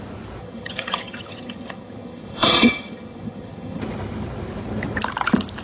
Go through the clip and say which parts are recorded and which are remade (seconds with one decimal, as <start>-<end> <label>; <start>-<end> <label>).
0.0-0.4 recorded; 0.4-3.8 remade; 3.8-5.6 recorded